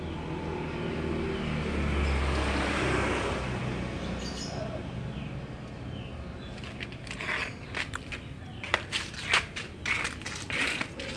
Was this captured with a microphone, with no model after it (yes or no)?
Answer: yes